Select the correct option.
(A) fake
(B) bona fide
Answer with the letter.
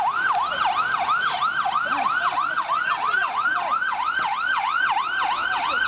B